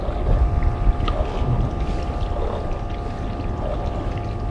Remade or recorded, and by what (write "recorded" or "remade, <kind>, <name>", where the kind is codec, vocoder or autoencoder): recorded